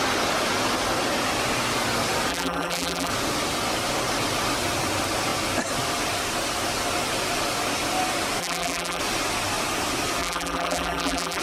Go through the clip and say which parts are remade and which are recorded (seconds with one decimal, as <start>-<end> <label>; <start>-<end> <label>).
0.0-2.3 recorded; 2.3-3.1 remade; 3.1-8.4 recorded; 8.4-9.0 remade; 9.0-10.2 recorded; 10.2-11.4 remade